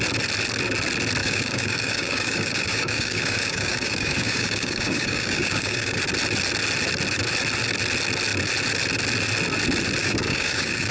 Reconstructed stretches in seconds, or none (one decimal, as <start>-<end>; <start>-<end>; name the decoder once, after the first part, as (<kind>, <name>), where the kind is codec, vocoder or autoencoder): 1.2-6.0 (codec, DAC); 10.0-10.9